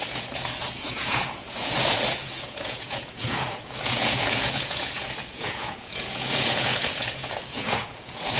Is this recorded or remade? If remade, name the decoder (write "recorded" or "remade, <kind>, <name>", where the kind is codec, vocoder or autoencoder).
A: remade, vocoder, Vocos